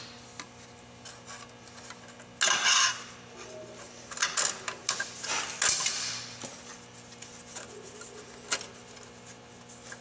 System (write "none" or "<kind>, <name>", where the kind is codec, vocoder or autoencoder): none